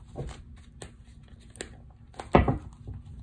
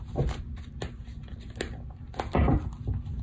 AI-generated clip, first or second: second